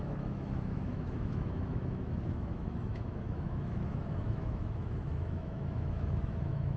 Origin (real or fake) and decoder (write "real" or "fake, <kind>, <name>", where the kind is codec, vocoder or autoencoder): fake, autoencoder, DAC-VAE